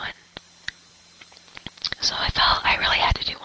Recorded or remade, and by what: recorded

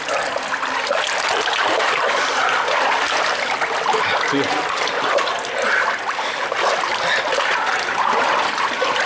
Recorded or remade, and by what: remade, vocoder, BigVGAN v2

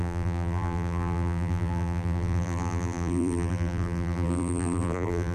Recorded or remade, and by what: remade, vocoder, BigVGAN v2